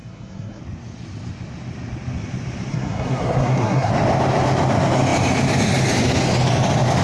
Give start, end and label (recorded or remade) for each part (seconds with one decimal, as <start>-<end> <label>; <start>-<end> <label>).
0.0-0.6 remade; 0.6-2.7 recorded; 2.7-3.9 remade; 3.9-7.0 recorded

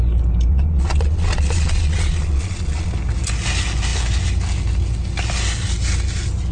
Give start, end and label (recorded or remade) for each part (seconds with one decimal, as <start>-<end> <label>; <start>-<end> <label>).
0.0-0.5 recorded; 0.5-2.9 remade; 2.9-6.5 recorded

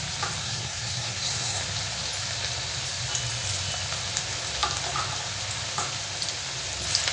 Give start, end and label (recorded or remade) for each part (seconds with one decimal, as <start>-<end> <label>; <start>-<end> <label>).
0.0-0.4 recorded; 0.4-1.6 remade; 1.6-7.1 recorded

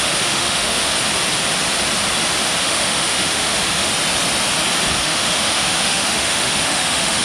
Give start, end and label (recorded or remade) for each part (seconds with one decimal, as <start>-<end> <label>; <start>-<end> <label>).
0.0-0.9 remade; 0.9-2.6 recorded; 2.6-3.9 remade; 3.9-5.0 recorded; 5.0-7.2 remade

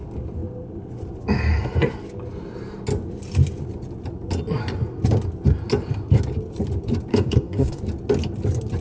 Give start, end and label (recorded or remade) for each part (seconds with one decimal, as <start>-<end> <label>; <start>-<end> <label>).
0.0-7.1 recorded; 7.1-7.8 remade; 7.8-8.8 recorded